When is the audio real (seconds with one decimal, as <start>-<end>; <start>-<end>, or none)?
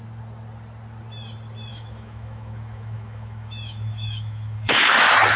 0.0-1.7; 4.9-5.4